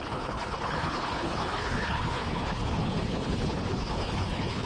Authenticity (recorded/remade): remade